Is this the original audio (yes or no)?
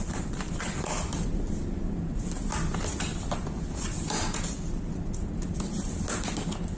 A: yes